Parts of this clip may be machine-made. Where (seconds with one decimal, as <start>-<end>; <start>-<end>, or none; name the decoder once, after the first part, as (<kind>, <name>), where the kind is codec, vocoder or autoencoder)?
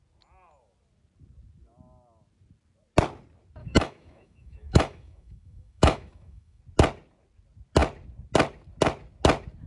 3.6-6.6 (autoencoder, DAC-VAE)